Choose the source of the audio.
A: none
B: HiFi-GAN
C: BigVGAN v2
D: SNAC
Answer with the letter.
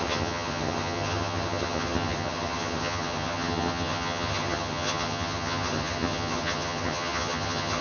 B